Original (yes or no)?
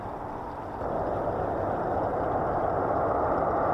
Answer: yes